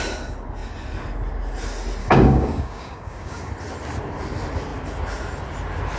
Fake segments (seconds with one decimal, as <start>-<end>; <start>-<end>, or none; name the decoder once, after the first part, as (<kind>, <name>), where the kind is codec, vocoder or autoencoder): 2.0-3.5 (codec, DAC)